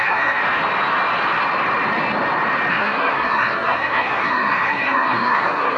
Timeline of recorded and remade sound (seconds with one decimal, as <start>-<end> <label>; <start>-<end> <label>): 0.0-0.4 remade; 0.4-2.7 recorded; 2.7-5.8 remade